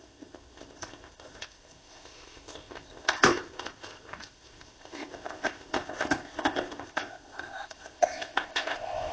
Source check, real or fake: fake